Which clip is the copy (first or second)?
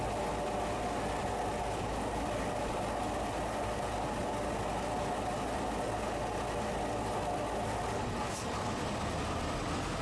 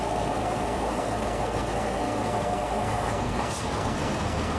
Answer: second